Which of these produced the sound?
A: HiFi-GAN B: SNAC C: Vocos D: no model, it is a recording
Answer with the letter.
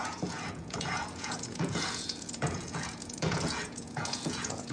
C